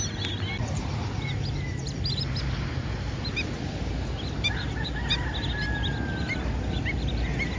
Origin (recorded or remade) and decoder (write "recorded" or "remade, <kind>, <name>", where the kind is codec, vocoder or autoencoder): recorded